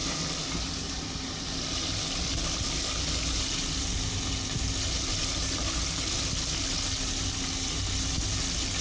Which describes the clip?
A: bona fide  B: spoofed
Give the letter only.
A